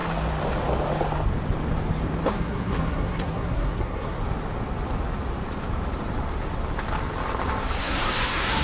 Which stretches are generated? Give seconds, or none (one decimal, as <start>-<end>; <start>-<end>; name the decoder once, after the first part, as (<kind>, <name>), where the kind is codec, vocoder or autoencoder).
2.3-4.2 (codec, SNAC); 7.8-8.6

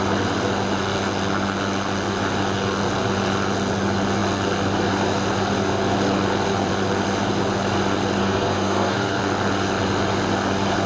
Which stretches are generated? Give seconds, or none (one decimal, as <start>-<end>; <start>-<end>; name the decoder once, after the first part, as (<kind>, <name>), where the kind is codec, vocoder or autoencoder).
8.2-9.2 (codec, SNAC)

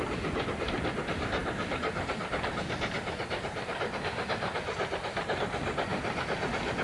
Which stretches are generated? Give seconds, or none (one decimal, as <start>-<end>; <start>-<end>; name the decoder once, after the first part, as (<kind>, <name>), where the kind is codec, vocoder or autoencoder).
none

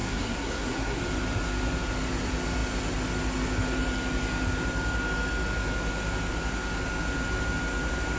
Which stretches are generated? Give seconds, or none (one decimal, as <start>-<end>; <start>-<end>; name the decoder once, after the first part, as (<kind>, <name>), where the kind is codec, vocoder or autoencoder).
0.0-1.0 (codec, SNAC)

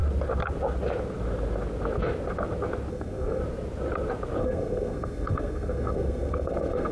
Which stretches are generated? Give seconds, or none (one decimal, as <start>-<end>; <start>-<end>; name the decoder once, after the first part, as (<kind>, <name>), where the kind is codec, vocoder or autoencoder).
2.9-3.4 (codec, SNAC); 4.4-6.9

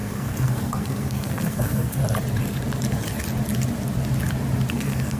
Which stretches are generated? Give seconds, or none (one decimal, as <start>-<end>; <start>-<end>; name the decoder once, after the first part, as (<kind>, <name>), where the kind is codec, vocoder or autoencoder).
0.0-2.0 (codec, SNAC); 4.7-5.2

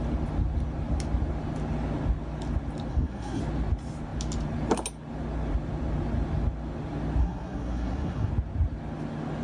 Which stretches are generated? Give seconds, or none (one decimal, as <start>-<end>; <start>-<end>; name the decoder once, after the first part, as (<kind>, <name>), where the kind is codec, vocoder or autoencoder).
2.9-3.4 (codec, SNAC); 7.2-8.3

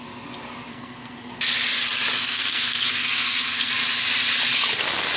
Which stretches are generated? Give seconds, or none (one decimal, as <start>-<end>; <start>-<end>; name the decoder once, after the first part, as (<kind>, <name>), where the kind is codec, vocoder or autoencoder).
0.7-1.3 (codec, SNAC); 2.2-3.7